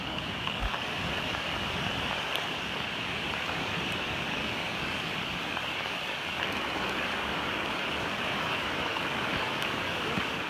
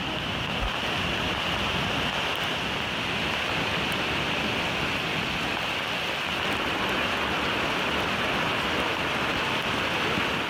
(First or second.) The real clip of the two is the second